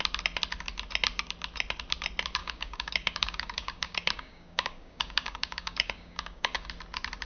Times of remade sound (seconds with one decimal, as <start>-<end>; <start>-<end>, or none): 2.4-6.7